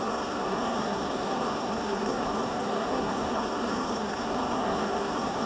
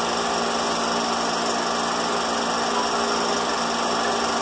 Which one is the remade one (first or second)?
first